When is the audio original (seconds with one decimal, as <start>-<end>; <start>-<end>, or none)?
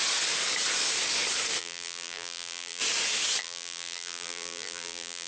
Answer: 0.0-1.6; 2.8-3.4